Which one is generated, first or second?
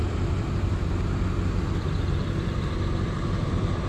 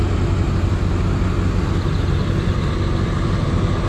first